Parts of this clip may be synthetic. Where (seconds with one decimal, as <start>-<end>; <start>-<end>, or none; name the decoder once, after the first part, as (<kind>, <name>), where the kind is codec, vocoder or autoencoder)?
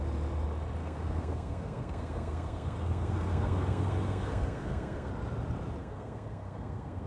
0.8-5.1 (codec, SNAC); 5.8-7.1